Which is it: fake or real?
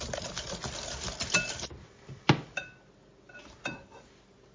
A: real